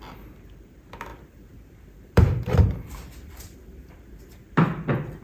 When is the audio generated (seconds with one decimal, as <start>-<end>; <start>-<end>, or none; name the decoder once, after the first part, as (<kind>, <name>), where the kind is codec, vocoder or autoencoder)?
1.1-4.2 (vocoder, BigVGAN v2)